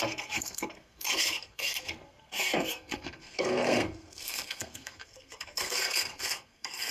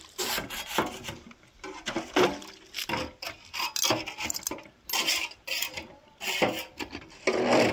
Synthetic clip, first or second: first